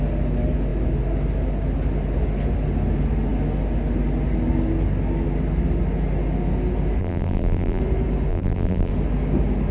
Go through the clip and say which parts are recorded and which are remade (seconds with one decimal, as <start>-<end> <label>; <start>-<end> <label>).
0.0-7.0 recorded; 7.0-7.8 remade; 7.8-8.3 recorded; 8.3-8.9 remade; 8.9-9.7 recorded

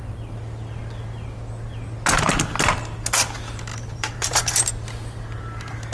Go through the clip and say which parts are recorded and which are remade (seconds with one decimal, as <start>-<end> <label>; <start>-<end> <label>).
0.0-3.7 recorded; 3.7-4.7 remade; 4.7-5.9 recorded

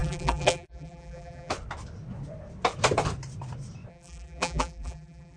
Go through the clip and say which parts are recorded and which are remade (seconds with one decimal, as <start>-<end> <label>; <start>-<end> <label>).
0.0-1.5 remade; 1.5-3.9 recorded; 3.9-5.4 remade

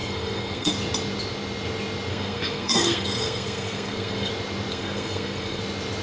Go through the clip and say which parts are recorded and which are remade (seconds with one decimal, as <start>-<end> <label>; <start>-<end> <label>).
0.0-0.7 remade; 0.7-2.1 recorded; 2.1-4.3 remade; 4.3-4.7 recorded; 4.7-5.6 remade; 5.6-6.0 recorded

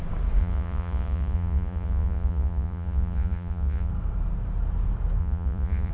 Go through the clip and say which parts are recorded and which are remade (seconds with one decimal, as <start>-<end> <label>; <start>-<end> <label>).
0.0-0.4 recorded; 0.4-3.9 remade; 3.9-5.2 recorded; 5.2-5.9 remade

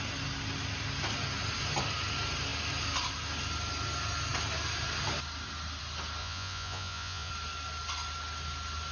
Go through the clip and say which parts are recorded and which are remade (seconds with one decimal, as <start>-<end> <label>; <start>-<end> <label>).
0.0-6.2 recorded; 6.2-7.3 remade; 7.3-8.9 recorded